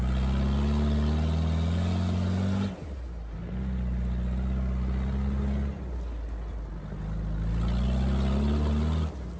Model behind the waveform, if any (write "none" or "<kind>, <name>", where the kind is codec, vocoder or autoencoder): none